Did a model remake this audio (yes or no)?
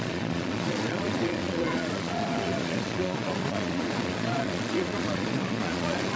yes